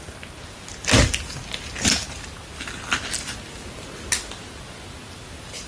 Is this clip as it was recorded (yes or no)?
yes